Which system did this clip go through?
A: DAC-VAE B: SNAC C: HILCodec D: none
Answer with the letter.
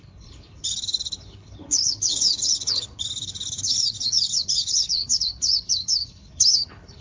C